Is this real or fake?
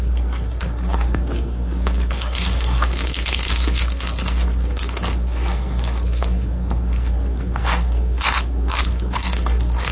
fake